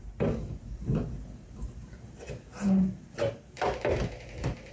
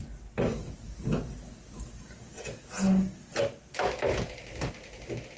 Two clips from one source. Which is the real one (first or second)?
second